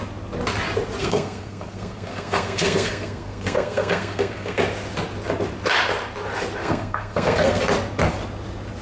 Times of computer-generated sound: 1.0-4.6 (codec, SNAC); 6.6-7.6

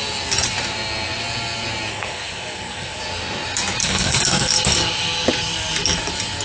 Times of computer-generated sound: 1.9-3.0 (codec, SNAC); 3.8-4.5

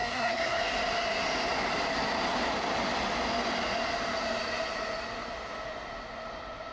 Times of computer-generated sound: 0.0-0.6 (codec, SNAC)

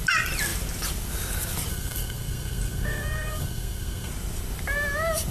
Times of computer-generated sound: 1.7-4.1 (codec, SNAC)

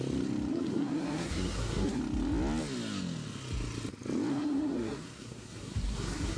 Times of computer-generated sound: 0.5-2.0 (codec, SNAC); 4.3-6.4